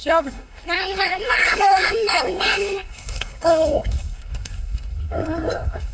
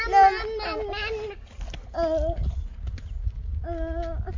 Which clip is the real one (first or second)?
second